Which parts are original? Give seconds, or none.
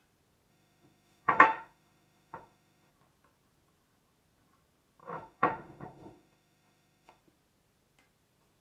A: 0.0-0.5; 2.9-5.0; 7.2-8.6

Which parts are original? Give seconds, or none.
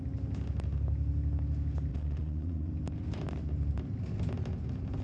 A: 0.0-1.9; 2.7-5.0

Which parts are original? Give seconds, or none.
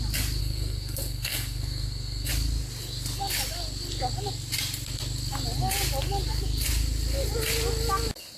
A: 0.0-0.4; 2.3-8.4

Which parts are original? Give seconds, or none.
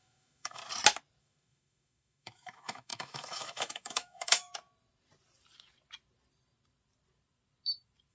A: 0.6-1.2; 4.5-8.1